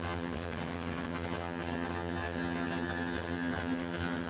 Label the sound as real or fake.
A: fake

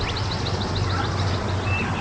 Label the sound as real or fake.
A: real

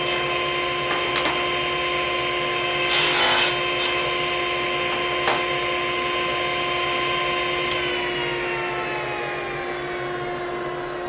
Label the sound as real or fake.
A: real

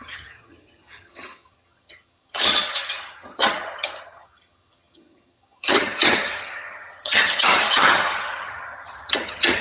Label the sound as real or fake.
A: fake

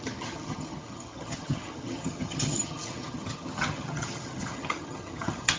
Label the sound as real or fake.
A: fake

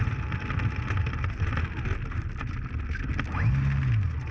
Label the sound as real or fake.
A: real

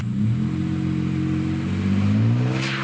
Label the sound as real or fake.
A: real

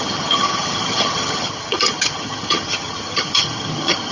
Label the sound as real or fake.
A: fake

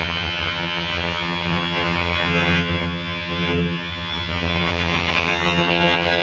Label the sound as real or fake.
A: fake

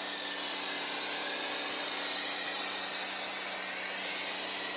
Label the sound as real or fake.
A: real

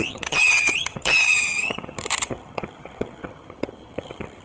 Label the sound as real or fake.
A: fake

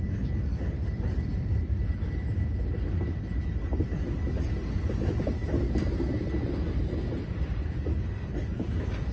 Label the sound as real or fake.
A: real